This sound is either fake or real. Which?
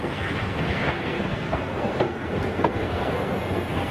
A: fake